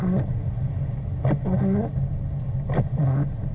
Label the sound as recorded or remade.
recorded